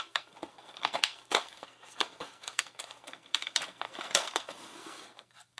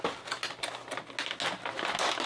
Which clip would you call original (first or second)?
second